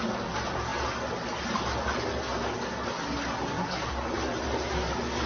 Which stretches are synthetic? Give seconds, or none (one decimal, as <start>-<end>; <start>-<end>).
none